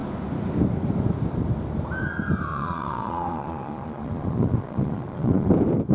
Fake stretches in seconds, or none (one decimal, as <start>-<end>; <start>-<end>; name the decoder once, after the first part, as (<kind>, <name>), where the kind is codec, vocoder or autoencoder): 2.5-5.5 (vocoder, Vocos)